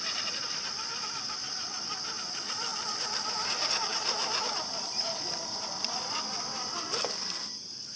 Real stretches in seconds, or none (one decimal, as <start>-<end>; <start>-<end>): none